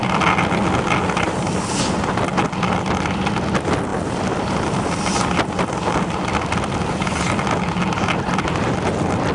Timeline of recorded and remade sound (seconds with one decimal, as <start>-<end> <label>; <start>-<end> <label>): 0.0-9.3 recorded